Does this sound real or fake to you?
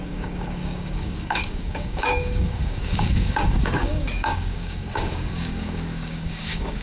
fake